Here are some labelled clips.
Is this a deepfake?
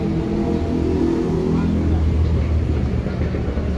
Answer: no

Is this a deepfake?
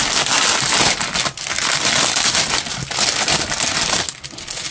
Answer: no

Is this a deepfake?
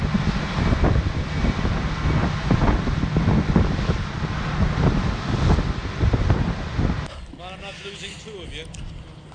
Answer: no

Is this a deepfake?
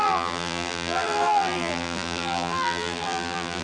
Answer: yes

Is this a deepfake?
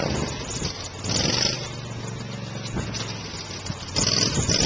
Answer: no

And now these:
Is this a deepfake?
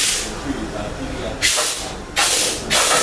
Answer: no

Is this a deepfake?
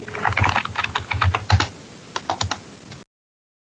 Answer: no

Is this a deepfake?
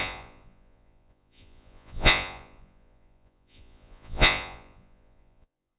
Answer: yes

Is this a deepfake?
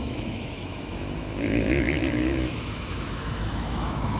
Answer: yes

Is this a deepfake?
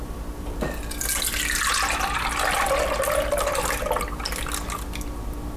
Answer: no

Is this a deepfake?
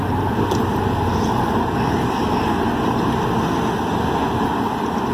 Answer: no